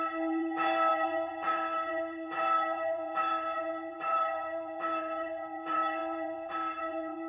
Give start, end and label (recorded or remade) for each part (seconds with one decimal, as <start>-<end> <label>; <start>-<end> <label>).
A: 0.0-7.3 remade